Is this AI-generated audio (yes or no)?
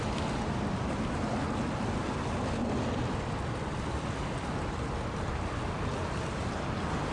no